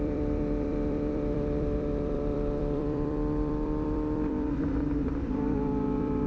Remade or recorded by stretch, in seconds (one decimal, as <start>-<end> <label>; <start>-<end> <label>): 0.0-6.3 remade